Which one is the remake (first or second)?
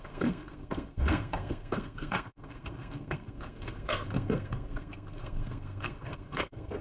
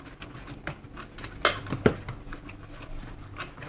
first